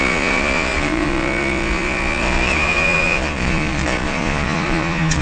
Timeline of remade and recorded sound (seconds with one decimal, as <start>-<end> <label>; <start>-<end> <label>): 0.0-5.2 remade